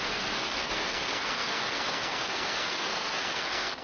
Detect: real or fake fake